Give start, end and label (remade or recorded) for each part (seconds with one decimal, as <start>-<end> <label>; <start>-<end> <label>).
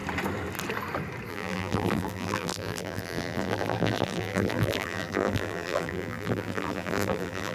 0.0-1.3 recorded; 1.3-7.5 remade